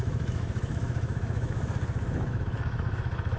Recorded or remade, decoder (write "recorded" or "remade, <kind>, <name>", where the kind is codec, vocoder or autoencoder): remade, autoencoder, DAC-VAE